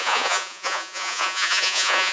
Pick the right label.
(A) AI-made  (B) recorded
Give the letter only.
A